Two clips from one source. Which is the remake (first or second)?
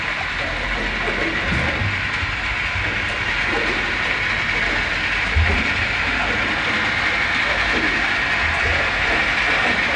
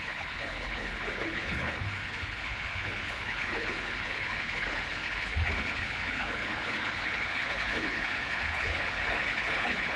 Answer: second